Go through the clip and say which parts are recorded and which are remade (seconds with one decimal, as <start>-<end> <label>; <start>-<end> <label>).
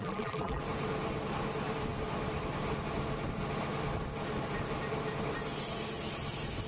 0.0-0.6 remade; 0.6-6.7 recorded